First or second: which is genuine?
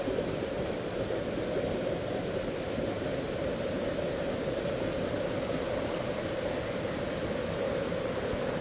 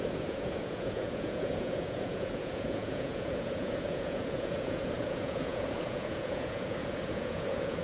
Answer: first